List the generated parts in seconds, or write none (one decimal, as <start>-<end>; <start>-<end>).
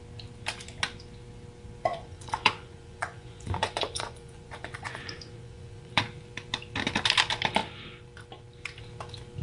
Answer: 1.9-6.0